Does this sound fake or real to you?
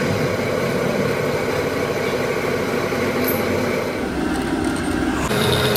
real